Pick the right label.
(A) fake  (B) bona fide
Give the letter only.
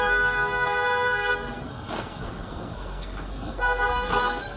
A